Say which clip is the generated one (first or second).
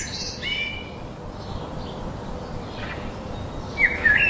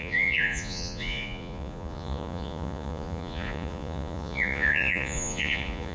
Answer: second